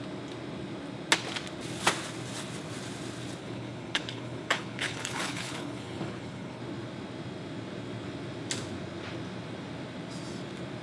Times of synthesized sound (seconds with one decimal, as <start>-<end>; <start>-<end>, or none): 3.4-6.6